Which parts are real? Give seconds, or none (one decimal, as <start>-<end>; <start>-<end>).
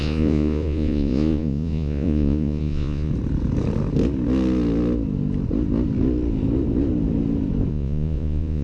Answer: 3.1-7.7